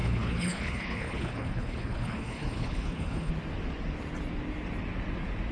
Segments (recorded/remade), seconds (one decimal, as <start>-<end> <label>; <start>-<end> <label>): 0.0-3.3 remade; 3.3-5.5 recorded